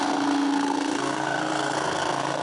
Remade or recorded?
remade